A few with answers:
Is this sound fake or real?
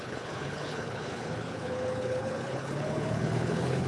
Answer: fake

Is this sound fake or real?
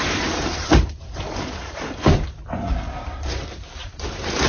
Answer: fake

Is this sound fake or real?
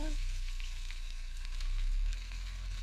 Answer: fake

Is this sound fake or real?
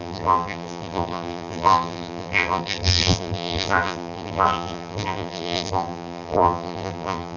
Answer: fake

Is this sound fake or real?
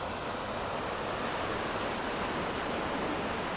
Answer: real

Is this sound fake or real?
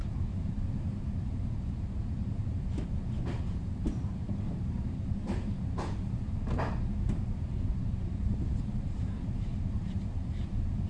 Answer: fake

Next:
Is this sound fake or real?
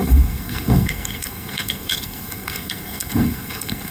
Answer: fake